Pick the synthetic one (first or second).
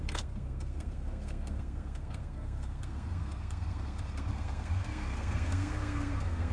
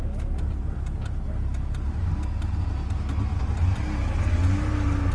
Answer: first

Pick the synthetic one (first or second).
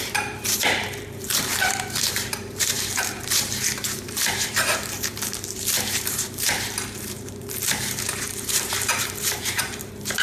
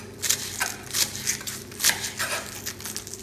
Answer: first